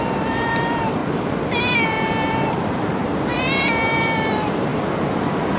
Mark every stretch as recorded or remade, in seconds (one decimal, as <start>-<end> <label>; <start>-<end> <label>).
0.0-1.0 remade; 1.0-1.9 recorded; 1.9-5.6 remade